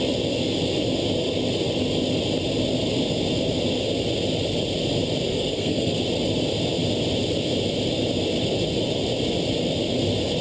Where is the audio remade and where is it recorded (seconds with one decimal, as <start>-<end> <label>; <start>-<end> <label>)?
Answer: 0.0-5.3 recorded; 5.3-6.0 remade; 6.0-10.4 recorded